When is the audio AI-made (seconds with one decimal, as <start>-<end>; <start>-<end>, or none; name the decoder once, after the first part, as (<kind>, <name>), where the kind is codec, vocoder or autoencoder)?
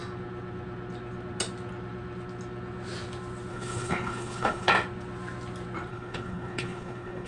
3.5-4.7 (codec, HILCodec); 5.9-7.3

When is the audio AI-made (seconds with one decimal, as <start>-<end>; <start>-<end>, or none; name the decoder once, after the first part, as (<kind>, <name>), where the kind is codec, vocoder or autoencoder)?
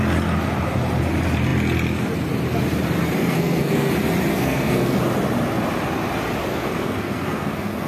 3.2-3.9 (codec, SNAC); 4.3-5.0; 6.5-7.9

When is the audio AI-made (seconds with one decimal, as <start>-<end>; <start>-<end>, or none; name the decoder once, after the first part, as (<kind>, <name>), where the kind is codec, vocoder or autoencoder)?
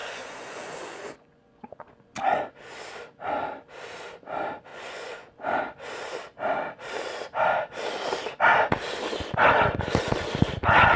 0.0-2.4 (vocoder, Vocos); 4.7-5.6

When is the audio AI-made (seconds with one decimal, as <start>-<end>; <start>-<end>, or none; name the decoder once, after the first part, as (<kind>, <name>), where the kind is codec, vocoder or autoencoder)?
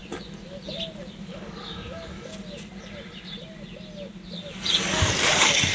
1.2-2.3 (codec, DAC)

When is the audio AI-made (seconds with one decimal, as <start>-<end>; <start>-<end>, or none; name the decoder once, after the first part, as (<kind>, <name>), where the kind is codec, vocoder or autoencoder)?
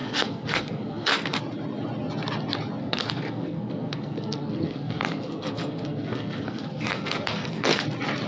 0.0-1.4 (codec, SNAC); 2.8-7.8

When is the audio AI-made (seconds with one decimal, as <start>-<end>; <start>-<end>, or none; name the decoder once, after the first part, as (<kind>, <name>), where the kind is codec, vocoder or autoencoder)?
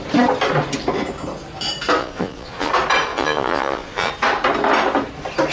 2.0-2.7 (vocoder, Vocos); 3.1-4.1